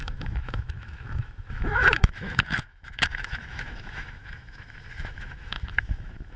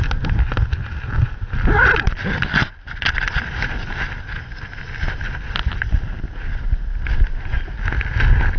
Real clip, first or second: second